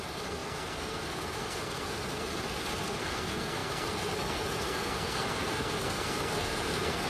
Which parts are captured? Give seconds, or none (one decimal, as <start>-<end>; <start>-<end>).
none